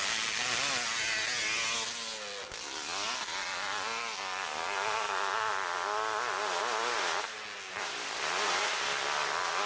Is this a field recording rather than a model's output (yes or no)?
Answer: yes